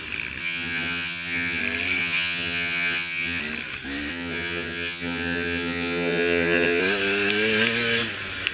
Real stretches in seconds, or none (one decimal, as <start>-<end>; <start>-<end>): 0.0-0.4; 1.6-2.0; 3.4-4.1; 6.8-8.5